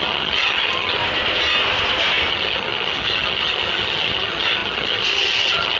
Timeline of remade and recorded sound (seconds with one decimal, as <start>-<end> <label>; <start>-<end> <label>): 0.0-1.0 remade; 1.0-2.3 recorded; 2.3-5.8 remade